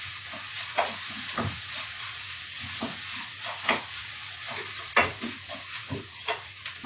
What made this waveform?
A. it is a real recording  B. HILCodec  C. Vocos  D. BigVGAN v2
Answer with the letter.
C